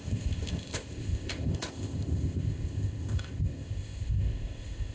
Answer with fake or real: fake